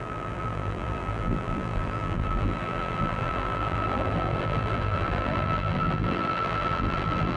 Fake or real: fake